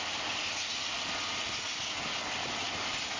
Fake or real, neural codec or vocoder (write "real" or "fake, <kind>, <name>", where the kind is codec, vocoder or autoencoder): real